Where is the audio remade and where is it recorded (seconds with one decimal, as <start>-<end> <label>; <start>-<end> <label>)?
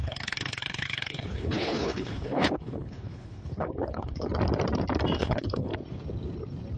0.0-4.3 remade; 4.3-5.2 recorded; 5.2-5.7 remade; 5.7-6.8 recorded